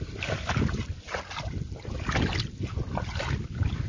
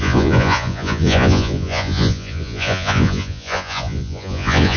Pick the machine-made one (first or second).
second